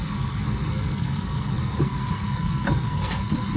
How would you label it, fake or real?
fake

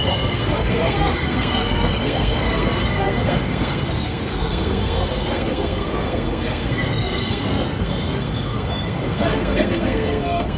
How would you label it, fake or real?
fake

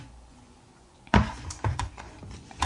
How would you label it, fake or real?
fake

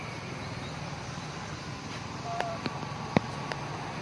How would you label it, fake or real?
real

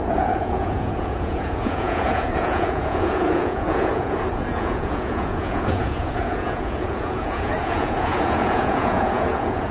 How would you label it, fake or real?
fake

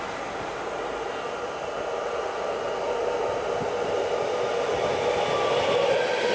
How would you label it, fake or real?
real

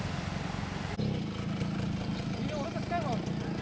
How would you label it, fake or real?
real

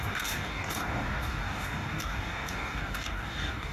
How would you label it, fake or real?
fake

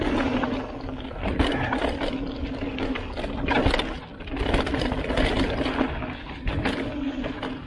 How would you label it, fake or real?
real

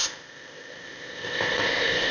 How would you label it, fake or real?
fake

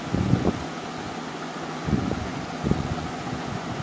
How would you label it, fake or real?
fake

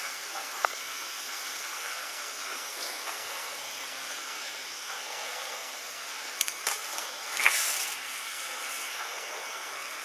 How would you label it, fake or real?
fake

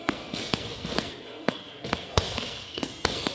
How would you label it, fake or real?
fake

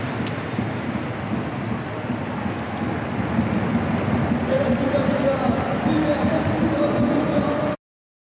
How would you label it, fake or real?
real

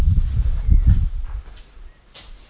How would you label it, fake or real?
real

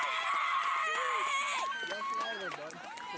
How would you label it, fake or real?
real